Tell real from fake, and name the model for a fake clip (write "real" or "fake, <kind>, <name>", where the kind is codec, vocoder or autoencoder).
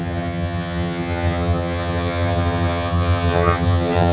fake, vocoder, HiFi-GAN